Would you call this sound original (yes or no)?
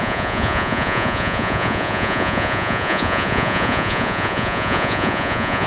no